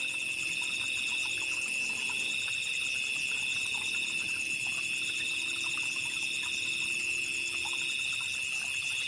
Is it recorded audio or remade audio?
recorded